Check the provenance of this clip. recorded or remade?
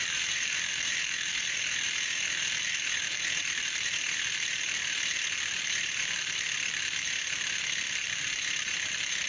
remade